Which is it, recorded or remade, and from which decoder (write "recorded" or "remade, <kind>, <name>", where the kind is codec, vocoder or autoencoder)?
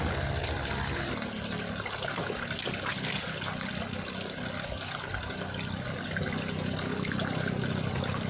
recorded